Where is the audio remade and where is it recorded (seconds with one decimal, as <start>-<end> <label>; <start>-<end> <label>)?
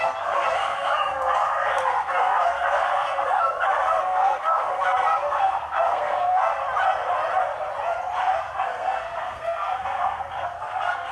0.0-6.6 remade; 6.6-8.4 recorded; 8.4-11.1 remade